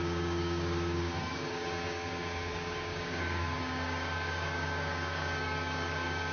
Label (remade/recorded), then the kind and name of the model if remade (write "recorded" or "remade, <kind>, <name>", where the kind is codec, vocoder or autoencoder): remade, codec, DAC